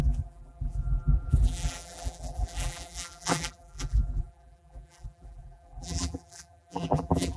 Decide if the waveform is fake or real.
fake